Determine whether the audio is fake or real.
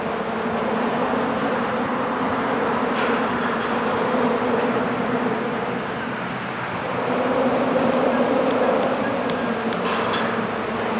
real